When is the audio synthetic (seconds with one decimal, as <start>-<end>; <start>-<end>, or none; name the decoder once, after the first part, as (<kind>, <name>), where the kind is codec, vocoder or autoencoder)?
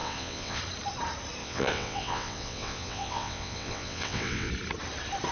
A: 0.0-0.6 (vocoder, WaveNeXt); 1.4-4.5